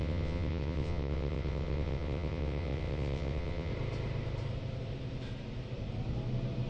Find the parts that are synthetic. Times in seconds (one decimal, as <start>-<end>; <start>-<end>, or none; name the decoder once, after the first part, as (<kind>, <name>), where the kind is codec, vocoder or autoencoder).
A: 0.0-3.7 (vocoder, WaveNeXt)